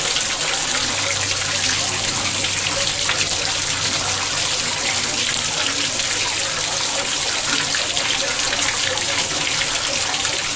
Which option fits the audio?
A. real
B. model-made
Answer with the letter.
A